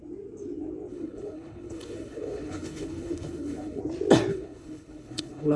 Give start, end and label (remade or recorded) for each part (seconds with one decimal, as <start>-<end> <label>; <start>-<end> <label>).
0.0-0.9 recorded; 0.9-3.8 remade; 3.8-4.3 recorded; 4.3-5.6 remade